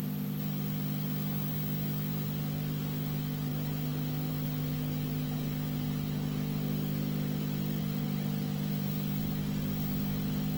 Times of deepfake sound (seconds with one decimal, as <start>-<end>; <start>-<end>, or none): none